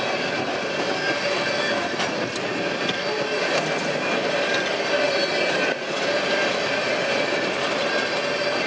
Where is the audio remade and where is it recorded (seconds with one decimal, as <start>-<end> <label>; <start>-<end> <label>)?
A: 0.0-8.7 recorded